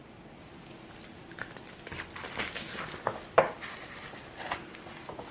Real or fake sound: real